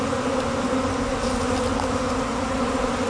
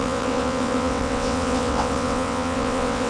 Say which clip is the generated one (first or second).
second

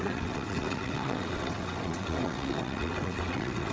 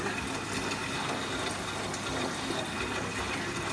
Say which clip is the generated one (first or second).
first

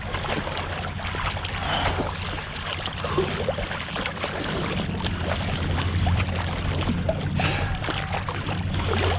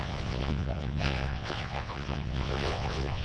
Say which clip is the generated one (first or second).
second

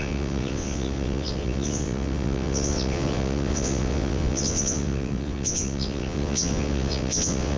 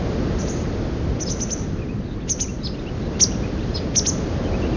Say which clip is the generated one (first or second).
first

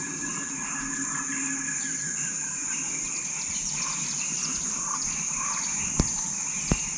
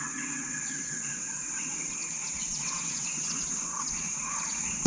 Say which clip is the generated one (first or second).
second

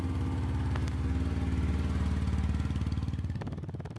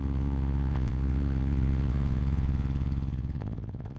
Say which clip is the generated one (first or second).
second